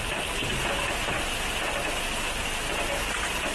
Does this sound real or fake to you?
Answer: real